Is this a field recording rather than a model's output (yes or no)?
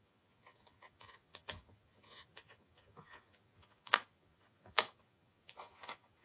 no